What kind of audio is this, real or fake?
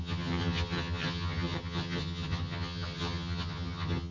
fake